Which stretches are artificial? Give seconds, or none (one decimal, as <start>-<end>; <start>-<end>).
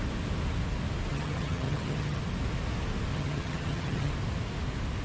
1.1-2.2; 3.1-4.1